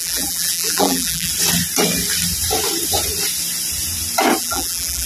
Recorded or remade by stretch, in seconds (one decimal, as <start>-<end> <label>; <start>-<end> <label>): 0.0-1.3 remade; 1.3-4.4 recorded; 4.4-5.1 remade